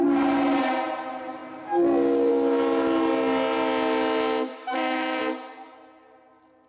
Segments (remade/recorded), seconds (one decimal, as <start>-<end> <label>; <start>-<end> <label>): 0.0-4.5 recorded; 4.5-5.2 remade; 5.2-6.7 recorded